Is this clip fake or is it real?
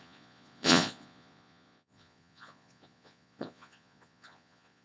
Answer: fake